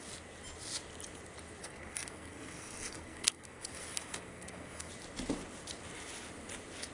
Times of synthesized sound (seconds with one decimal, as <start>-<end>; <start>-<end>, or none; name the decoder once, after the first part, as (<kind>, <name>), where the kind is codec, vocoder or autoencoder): 1.6-4.9 (codec, SNAC)

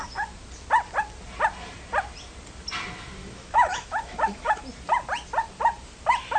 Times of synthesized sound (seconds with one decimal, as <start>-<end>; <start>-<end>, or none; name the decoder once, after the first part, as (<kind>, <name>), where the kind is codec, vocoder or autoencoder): 3.2-4.6 (autoencoder, DAC-VAE)

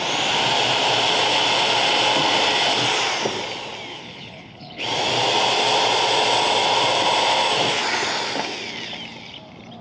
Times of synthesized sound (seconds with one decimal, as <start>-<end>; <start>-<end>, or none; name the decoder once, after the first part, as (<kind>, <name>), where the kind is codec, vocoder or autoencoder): 3.9-4.8 (codec, HILCodec)

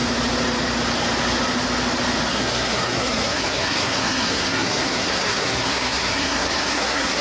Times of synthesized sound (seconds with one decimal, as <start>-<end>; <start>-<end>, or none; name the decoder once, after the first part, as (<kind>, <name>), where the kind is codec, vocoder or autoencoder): 2.3-7.2 (codec, SNAC)

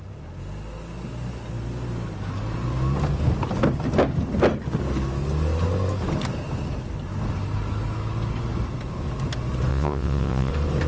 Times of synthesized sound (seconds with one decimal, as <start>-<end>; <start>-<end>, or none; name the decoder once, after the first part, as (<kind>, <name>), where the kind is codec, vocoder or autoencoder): 9.7-10.5 (vocoder, Vocos)